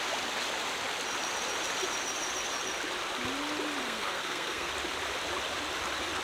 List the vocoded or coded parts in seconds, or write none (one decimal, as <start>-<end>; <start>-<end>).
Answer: 3.8-4.7